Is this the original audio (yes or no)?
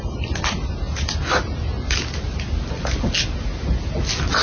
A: yes